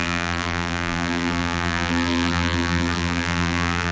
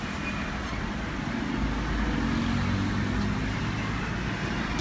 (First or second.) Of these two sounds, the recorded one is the second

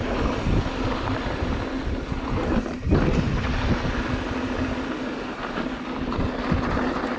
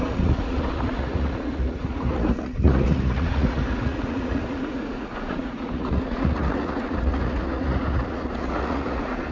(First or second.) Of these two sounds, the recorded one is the first